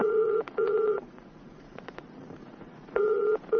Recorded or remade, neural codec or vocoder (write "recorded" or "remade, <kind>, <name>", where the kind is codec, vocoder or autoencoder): remade, vocoder, Vocos